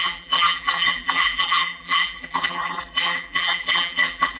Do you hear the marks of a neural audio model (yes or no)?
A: yes